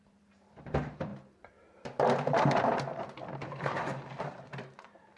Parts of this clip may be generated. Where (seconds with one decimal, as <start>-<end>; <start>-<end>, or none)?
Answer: 0.0-5.2